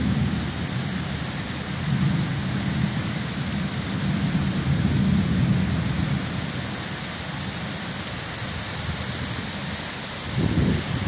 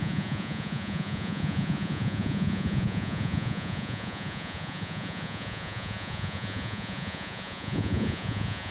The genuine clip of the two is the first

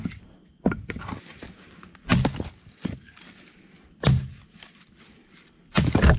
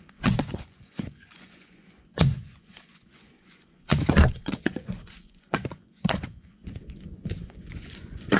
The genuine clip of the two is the first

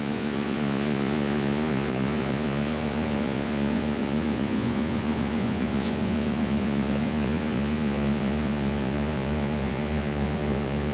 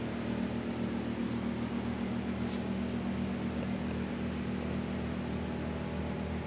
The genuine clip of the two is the second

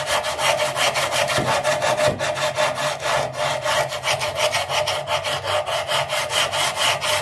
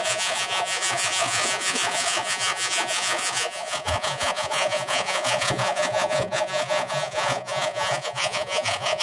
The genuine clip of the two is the first